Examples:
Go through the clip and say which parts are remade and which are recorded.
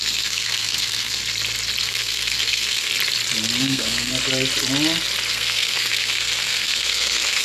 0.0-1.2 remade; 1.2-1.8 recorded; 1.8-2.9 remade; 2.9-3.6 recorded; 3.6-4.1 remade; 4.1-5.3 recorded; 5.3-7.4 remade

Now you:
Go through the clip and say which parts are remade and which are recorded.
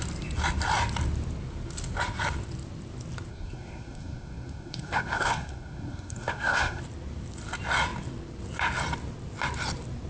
0.0-3.3 recorded; 3.3-6.8 remade; 6.8-10.1 recorded